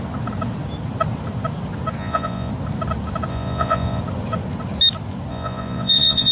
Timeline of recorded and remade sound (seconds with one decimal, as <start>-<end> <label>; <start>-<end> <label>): 0.0-2.0 recorded; 2.0-2.5 remade; 2.5-3.3 recorded; 3.3-4.0 remade; 4.0-5.3 recorded; 5.3-6.3 remade